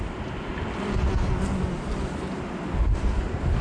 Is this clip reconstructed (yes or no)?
no